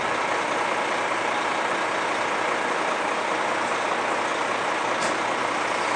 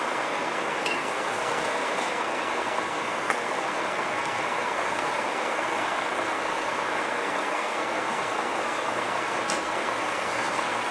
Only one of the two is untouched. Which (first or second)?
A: first